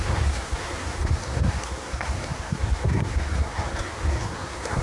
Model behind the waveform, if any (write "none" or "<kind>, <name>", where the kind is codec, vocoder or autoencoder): codec, SNAC